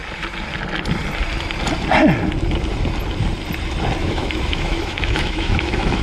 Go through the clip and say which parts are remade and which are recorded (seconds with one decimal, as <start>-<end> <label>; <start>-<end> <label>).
0.0-4.0 recorded; 4.0-6.0 remade